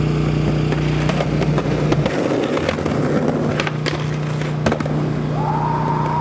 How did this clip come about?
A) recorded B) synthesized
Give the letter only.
A